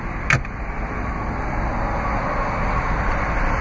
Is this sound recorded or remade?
recorded